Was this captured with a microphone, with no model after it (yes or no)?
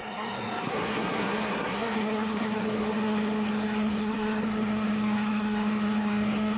no